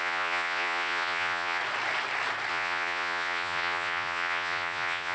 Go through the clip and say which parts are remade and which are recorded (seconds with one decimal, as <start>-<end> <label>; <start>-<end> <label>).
0.0-1.6 remade; 1.6-2.5 recorded; 2.5-5.1 remade